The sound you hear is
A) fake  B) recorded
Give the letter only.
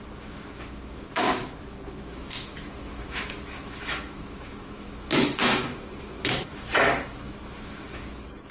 A